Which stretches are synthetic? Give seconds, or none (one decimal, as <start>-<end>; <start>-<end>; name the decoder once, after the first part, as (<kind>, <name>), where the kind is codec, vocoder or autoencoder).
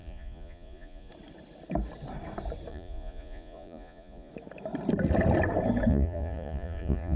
0.0-1.1 (vocoder, Vocos); 2.7-4.3; 5.9-7.2